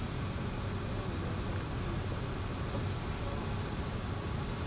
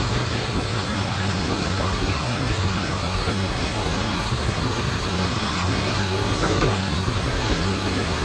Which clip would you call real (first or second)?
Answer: first